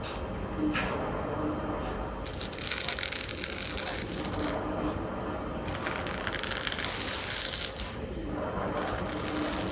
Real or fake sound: real